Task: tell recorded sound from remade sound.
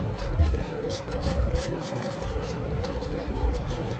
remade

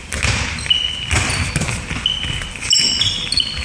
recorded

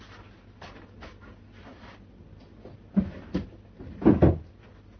recorded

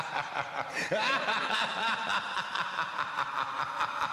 remade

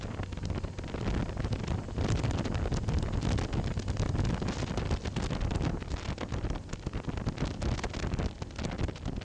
recorded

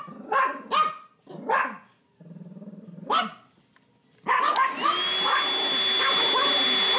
recorded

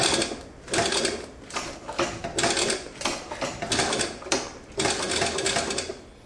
recorded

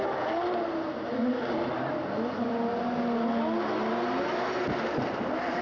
recorded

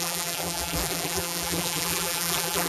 remade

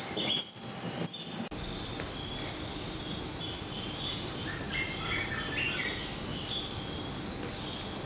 recorded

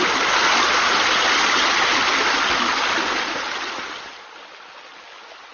recorded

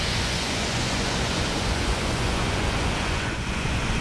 remade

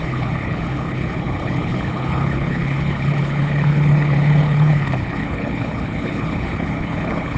remade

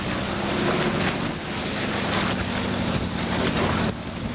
recorded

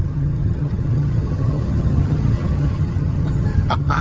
remade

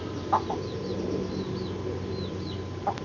recorded